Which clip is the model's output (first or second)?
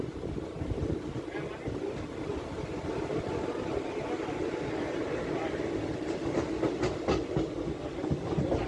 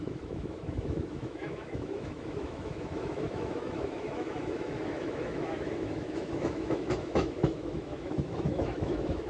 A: second